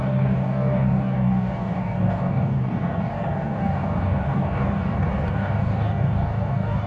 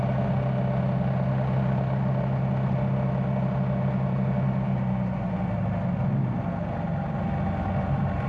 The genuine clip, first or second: second